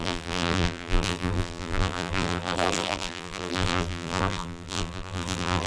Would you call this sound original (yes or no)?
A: no